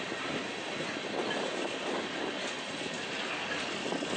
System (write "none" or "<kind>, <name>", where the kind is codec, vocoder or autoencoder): none